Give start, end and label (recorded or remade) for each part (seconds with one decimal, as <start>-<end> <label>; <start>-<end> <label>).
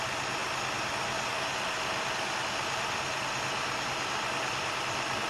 0.0-5.3 recorded